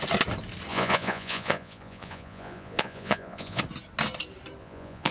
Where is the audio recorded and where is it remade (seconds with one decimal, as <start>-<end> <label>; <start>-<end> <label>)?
0.0-0.7 recorded; 0.7-3.6 remade; 3.6-4.6 recorded; 4.6-5.1 remade